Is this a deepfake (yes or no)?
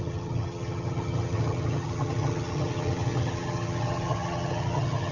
yes